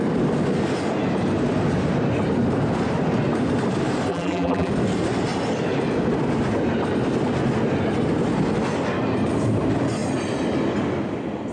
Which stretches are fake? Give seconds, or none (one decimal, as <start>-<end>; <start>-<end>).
4.1-4.7